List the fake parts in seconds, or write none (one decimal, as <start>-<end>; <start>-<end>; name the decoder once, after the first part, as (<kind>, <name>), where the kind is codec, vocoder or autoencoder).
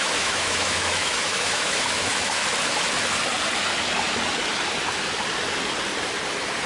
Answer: 0.0-2.4 (autoencoder, DAC-VAE)